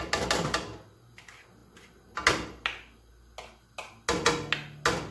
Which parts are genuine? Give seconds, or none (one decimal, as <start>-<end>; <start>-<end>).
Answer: 0.0-5.1